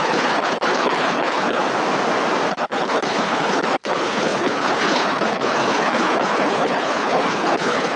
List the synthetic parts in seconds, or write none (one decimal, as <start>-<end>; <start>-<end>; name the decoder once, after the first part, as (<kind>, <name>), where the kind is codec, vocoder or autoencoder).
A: 0.0-1.6 (codec, HILCodec); 2.5-8.0

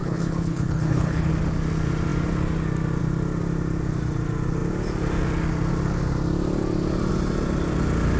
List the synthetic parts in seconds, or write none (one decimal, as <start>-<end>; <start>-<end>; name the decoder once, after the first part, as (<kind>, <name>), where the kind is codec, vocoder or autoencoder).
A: 0.0-1.3 (codec, HILCodec)